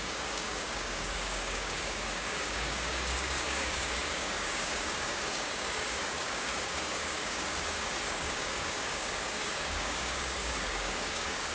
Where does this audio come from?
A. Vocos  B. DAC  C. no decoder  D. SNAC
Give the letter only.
B